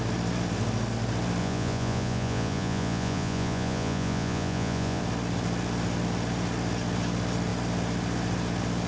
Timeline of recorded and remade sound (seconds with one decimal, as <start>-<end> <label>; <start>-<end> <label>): 0.0-1.4 recorded; 1.4-5.0 remade; 5.0-8.9 recorded